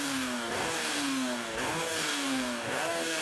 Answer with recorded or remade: remade